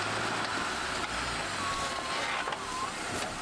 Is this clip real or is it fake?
real